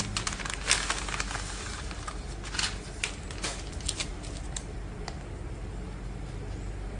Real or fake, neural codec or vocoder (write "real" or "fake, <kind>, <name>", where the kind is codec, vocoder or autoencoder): real